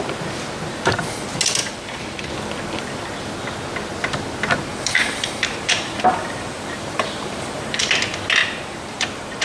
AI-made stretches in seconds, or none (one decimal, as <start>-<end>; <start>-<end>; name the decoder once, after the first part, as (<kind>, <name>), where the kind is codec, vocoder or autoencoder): 1.6-2.3 (vocoder, BigVGAN v2); 4.7-7.8; 8.4-9.4